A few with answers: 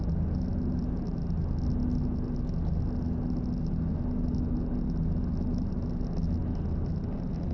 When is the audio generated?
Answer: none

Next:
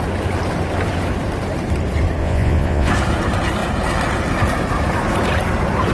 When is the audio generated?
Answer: 2.2-2.9 (vocoder, Vocos)

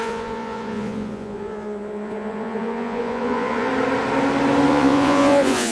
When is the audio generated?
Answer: 0.0-3.7 (vocoder, Vocos); 4.7-5.7